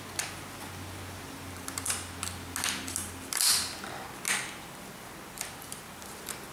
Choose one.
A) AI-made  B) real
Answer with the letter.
B